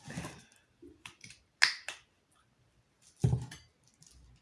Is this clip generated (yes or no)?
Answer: no